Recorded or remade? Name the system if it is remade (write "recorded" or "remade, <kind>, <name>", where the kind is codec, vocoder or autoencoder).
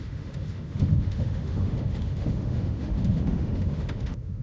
remade, autoencoder, DAC-VAE